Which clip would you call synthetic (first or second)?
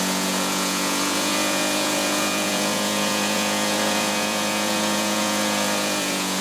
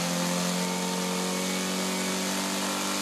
first